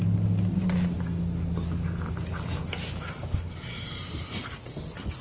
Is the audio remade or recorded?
recorded